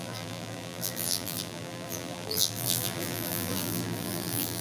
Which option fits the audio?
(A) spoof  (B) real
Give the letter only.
A